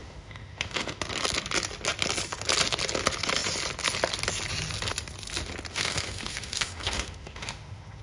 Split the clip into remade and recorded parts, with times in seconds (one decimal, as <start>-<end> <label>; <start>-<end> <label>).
0.0-1.0 remade; 1.0-5.7 recorded; 5.7-8.0 remade